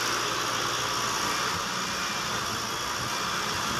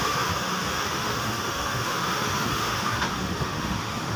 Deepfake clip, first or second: second